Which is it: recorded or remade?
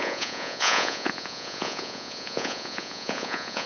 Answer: remade